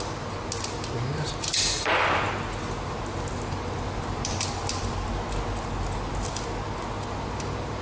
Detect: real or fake real